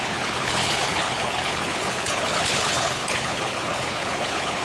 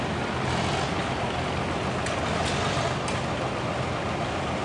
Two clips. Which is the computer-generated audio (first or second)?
first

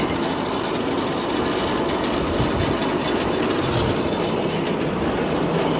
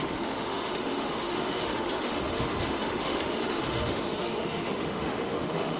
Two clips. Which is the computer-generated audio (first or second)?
second